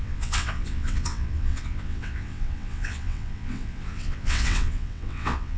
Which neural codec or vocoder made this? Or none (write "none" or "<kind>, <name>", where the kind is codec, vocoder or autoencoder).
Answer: vocoder, WaveNeXt